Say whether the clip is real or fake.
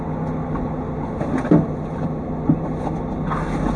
real